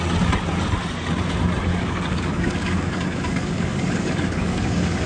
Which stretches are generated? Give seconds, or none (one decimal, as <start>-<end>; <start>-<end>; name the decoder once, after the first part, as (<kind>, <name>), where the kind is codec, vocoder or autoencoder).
1.7-5.1 (codec, DAC)